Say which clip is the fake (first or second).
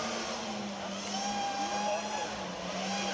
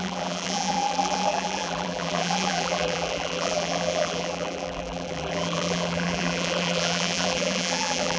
second